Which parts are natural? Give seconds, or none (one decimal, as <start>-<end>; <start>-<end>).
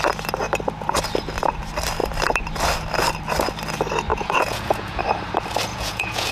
0.0-4.1; 5.0-5.7